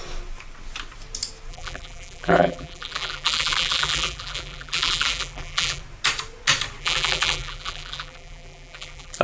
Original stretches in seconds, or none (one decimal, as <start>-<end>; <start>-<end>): 0.0-1.5; 5.8-6.8